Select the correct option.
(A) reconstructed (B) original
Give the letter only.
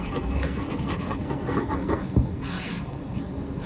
A